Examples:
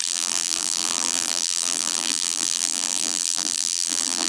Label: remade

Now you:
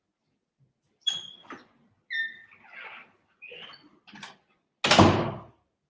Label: recorded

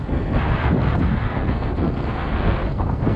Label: remade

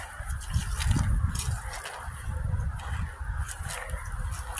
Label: recorded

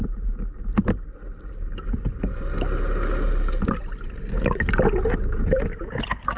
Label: recorded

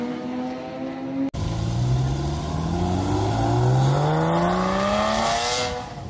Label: recorded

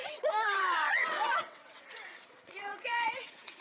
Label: remade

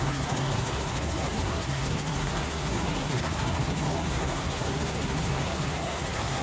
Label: remade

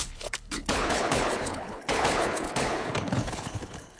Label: remade